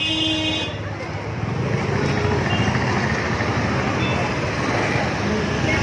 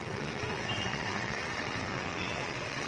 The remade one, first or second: second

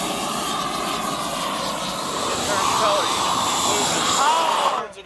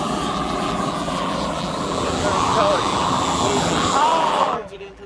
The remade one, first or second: second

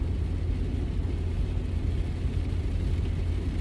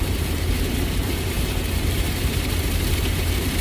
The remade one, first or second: second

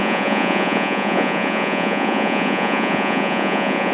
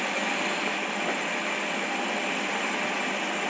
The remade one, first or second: first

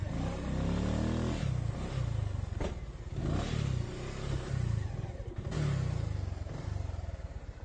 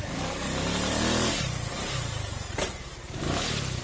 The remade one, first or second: second